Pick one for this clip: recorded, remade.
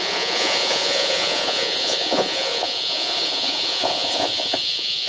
remade